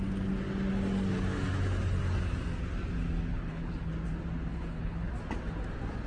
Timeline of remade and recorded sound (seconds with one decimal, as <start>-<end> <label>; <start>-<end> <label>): 0.0-3.3 recorded; 3.3-3.9 remade; 3.9-4.5 recorded; 4.5-5.1 remade; 5.1-6.1 recorded